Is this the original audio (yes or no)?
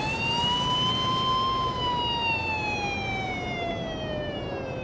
yes